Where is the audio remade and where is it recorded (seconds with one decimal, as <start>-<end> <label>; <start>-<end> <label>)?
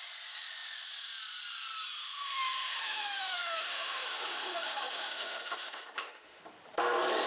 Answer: 0.0-2.0 recorded; 2.0-6.4 remade; 6.4-7.3 recorded